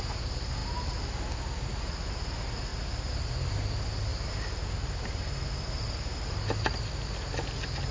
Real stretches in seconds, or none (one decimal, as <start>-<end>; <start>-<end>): 0.0-7.9